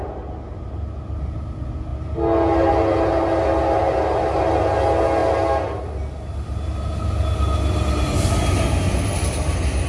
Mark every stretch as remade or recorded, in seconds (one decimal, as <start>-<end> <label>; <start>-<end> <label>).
0.0-9.9 recorded